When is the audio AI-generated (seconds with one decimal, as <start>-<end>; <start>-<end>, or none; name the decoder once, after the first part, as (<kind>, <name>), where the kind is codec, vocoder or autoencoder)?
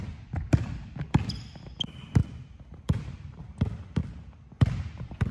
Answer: 2.2-3.4 (vocoder, BigVGAN v2)